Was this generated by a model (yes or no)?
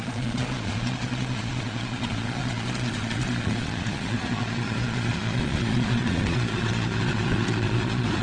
yes